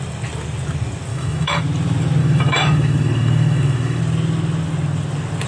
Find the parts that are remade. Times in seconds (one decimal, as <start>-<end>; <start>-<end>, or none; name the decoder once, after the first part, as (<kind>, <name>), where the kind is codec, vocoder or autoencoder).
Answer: 1.1-1.6 (autoencoder, DAC-VAE); 2.2-4.0